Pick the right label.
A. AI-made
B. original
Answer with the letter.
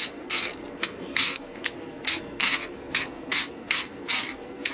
A